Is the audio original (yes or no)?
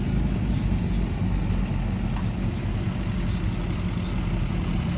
yes